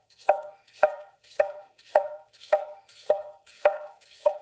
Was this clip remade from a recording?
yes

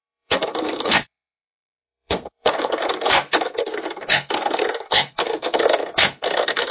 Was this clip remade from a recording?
yes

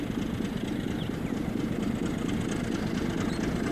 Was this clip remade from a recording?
no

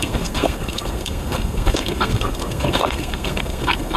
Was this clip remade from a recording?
yes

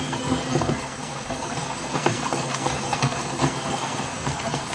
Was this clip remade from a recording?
yes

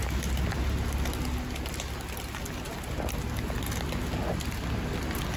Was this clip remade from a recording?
no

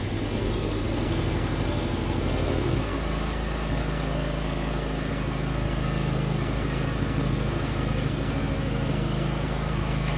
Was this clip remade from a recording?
yes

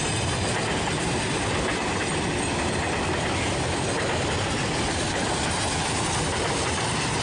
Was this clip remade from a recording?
no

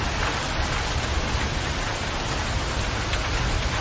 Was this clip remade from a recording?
no